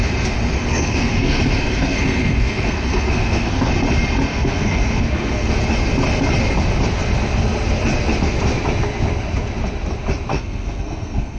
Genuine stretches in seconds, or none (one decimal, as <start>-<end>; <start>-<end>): 0.0-0.6; 3.7-4.3; 5.5-10.3